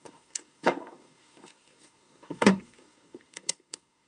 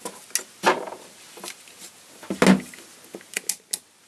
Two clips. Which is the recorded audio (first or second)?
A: second